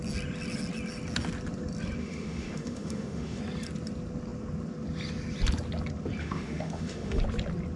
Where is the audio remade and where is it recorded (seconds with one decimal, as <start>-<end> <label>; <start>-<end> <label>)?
0.0-2.0 recorded; 2.0-3.4 remade; 3.4-6.2 recorded; 6.2-7.2 remade; 7.2-7.8 recorded